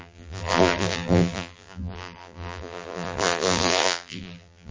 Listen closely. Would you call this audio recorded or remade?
remade